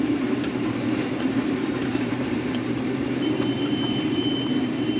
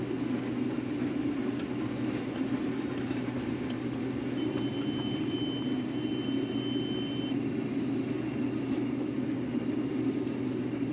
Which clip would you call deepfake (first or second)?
first